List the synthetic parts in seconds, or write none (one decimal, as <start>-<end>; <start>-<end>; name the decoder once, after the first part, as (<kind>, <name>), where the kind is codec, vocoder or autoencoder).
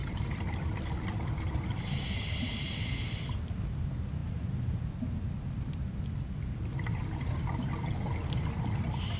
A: none